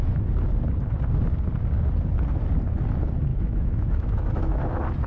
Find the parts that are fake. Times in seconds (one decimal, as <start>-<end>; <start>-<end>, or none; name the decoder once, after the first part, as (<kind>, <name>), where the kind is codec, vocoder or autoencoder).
3.3-4.6 (autoencoder, DAC-VAE)